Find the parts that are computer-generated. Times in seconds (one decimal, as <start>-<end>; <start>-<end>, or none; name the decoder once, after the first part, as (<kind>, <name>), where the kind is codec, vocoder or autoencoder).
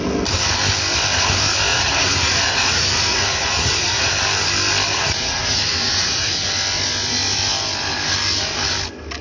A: 1.7-4.1 (vocoder, Vocos); 4.9-6.5